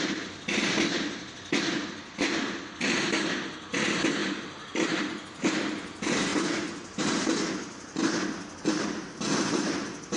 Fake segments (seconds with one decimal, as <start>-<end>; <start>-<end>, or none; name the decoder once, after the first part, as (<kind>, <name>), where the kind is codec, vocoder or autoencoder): none